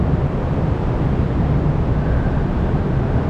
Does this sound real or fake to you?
fake